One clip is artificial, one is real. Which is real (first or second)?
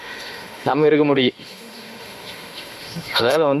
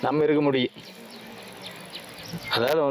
second